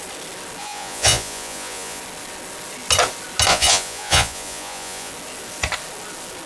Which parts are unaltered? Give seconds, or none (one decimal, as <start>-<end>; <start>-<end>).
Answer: 0.0-0.6; 2.0-3.5; 5.1-6.5